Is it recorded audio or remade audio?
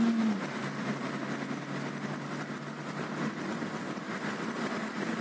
recorded